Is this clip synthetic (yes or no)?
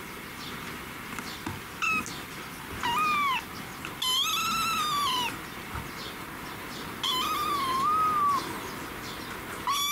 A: no